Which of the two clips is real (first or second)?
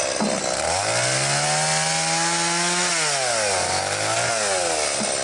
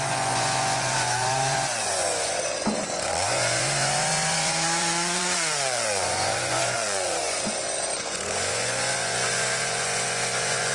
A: first